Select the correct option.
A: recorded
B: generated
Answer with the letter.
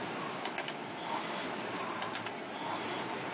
A